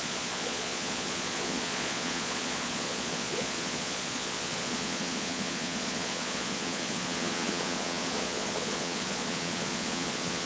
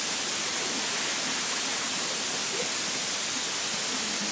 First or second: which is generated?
first